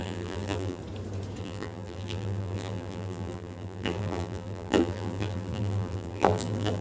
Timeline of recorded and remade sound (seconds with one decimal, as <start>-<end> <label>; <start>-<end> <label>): 0.0-0.8 remade; 0.8-1.4 recorded; 1.4-6.8 remade